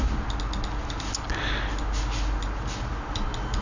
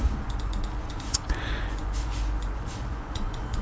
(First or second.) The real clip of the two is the first